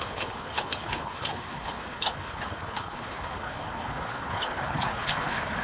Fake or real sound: fake